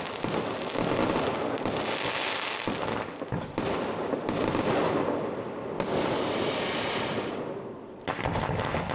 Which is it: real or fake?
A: real